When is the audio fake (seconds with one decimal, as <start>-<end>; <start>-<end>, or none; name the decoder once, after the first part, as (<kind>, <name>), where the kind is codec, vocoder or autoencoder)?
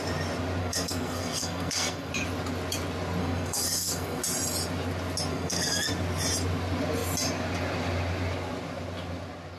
0.6-2.1 (codec, SNAC); 3.2-4.2; 5.3-5.9